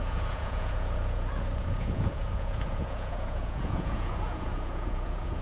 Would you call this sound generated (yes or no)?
yes